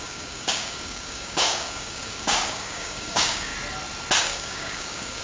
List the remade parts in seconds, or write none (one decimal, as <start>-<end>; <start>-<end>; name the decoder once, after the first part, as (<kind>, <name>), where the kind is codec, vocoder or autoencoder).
0.0-3.5 (codec, DAC); 4.2-5.2